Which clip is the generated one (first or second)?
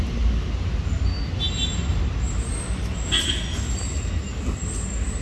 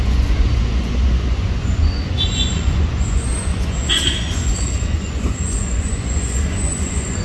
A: second